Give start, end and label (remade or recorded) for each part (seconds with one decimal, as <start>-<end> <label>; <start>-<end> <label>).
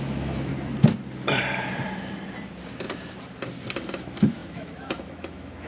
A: 0.0-0.5 remade; 0.5-3.9 recorded; 3.9-5.7 remade